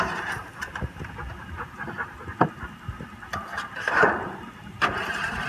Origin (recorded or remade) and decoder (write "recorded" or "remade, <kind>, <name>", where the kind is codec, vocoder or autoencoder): remade, vocoder, BigVGAN v2